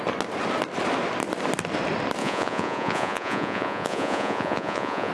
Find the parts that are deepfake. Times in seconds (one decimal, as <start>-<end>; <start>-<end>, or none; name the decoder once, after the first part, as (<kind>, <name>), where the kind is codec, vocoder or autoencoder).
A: 2.2-5.1 (vocoder, Vocos)